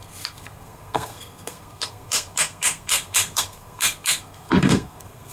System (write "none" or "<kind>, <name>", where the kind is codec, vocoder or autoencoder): codec, SNAC